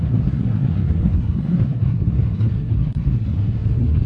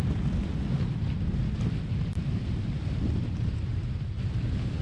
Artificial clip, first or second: first